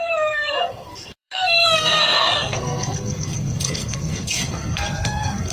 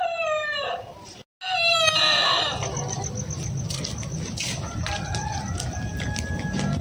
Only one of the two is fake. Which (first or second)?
first